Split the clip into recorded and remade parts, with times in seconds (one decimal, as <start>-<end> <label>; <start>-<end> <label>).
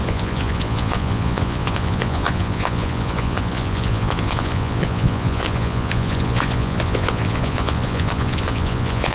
0.0-9.1 remade